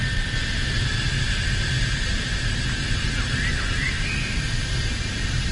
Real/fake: real